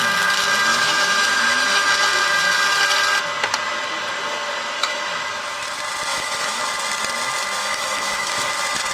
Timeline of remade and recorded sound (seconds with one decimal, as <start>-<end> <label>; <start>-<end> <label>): 0.0-0.7 recorded; 0.7-1.9 remade; 1.9-4.8 recorded; 4.8-5.3 remade; 5.3-6.1 recorded; 6.1-6.6 remade; 6.6-7.6 recorded; 7.6-8.5 remade; 8.5-8.9 recorded